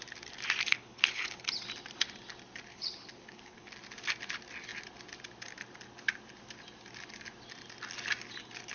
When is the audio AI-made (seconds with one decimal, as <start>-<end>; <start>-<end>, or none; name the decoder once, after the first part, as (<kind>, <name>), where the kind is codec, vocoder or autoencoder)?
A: 0.7-1.4 (codec, HILCodec); 2.7-3.7